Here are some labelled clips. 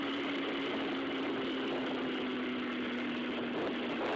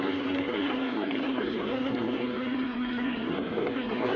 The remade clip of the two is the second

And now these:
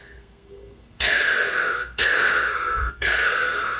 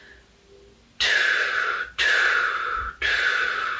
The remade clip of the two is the first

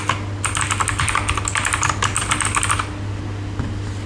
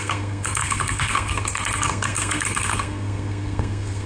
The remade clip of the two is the second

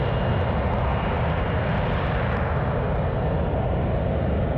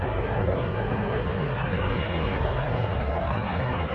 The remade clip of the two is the second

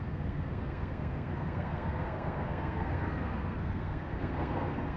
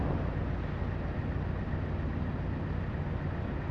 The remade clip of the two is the first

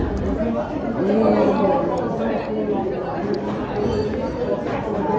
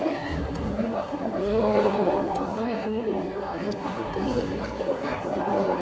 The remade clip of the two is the second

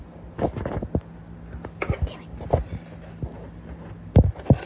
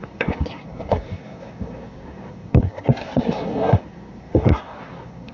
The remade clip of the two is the second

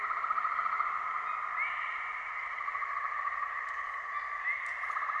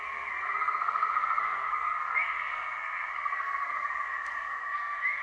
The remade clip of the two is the second